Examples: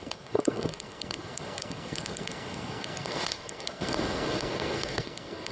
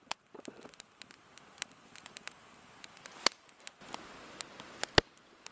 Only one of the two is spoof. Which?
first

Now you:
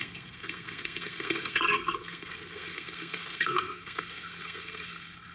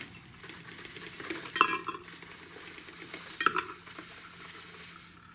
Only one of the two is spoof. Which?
first